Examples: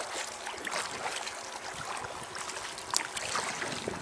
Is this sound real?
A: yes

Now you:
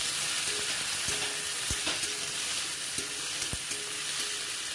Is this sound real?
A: yes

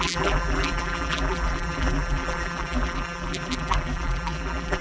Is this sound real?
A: no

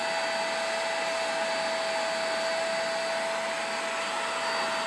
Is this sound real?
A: yes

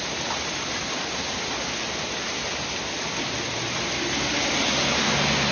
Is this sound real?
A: yes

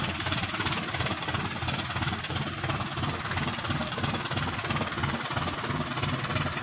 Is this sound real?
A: no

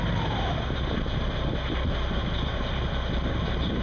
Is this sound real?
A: yes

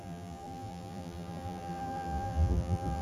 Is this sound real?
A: no